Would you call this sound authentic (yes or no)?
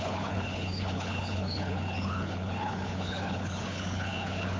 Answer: no